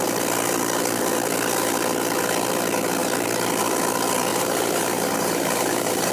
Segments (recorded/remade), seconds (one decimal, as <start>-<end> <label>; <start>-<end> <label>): 0.0-4.3 recorded; 4.3-6.1 remade